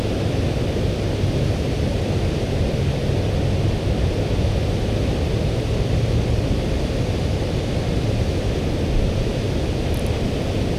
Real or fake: real